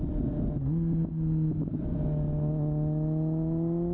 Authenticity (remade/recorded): recorded